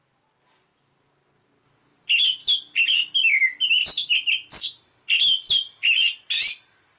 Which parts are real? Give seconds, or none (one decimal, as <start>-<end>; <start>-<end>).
0.0-7.0